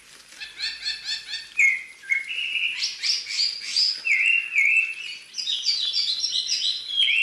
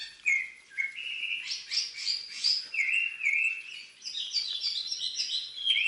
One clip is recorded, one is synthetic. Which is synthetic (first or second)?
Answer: second